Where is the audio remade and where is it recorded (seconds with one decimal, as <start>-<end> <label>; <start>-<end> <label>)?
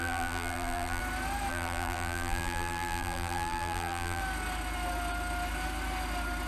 0.0-1.0 remade; 1.0-1.5 recorded; 1.5-4.2 remade; 4.2-6.5 recorded